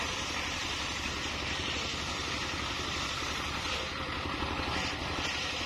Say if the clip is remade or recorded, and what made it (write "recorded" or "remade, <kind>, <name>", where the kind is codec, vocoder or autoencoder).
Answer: remade, vocoder, BigVGAN v2